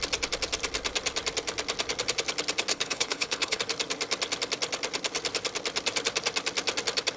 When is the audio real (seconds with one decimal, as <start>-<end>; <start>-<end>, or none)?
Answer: 0.0-2.7; 3.6-7.2